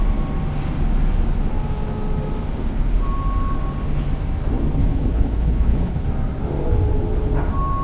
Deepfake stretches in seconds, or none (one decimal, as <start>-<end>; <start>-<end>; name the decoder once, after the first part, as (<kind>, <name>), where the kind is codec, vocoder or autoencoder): 4.8-6.1 (codec, HILCodec)